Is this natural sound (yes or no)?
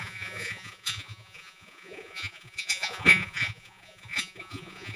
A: no